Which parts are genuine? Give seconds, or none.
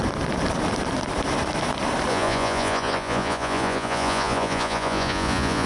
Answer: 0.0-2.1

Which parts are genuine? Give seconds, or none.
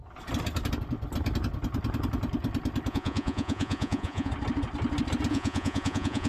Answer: 0.0-2.9; 4.3-5.3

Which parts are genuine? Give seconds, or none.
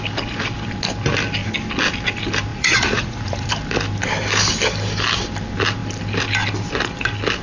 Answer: 0.0-2.5; 3.5-7.4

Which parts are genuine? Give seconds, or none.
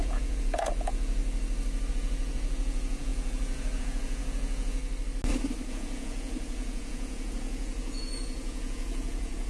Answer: 1.2-1.9; 4.8-5.7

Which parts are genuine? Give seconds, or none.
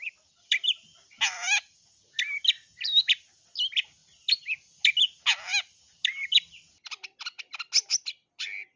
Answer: 0.0-8.8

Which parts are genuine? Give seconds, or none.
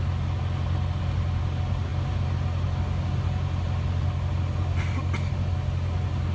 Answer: 0.0-6.3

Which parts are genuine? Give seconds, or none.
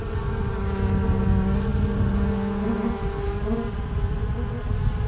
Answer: 0.0-5.1